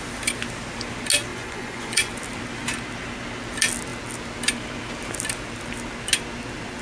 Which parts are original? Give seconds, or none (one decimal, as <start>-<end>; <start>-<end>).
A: 0.0-1.3; 2.1-6.8